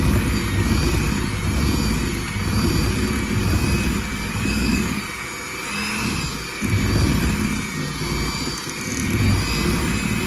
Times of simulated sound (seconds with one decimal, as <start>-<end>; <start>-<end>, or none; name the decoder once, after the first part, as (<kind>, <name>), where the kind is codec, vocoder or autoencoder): 4.1-5.0 (codec, DAC)